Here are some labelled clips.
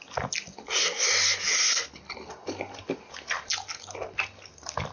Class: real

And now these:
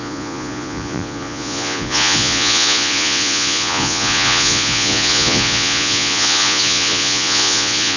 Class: fake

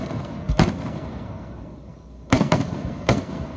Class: fake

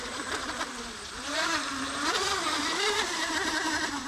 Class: fake